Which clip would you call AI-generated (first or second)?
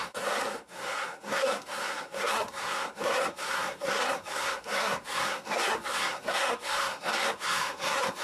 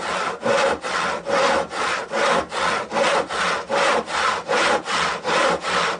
first